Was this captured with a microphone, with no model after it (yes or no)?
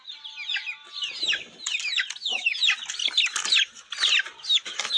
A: yes